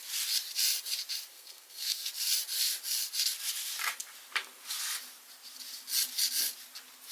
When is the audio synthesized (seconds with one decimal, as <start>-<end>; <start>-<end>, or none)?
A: 1.3-2.1